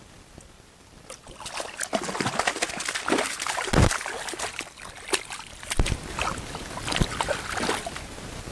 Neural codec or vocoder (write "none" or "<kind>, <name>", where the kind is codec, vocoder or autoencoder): none